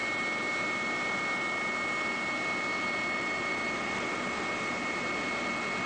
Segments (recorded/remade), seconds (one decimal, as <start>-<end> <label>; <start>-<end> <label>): 0.0-5.9 recorded